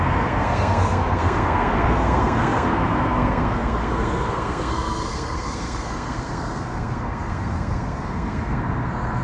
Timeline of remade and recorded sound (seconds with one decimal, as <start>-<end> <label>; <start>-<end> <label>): 0.0-9.2 remade